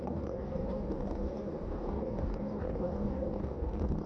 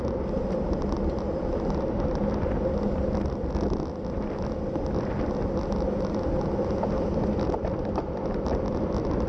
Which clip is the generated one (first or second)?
first